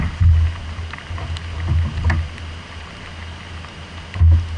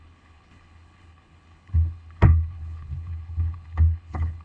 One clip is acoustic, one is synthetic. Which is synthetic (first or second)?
second